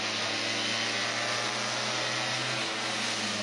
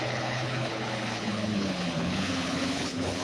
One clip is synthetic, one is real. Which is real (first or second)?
first